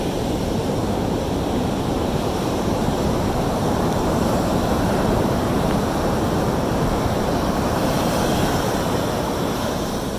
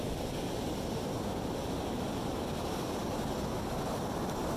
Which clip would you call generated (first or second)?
first